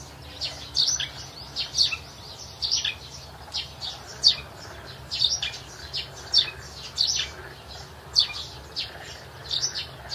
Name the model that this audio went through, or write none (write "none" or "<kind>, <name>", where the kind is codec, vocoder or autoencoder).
none